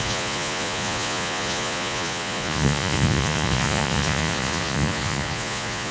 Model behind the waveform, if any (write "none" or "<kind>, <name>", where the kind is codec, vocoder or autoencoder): vocoder, Vocos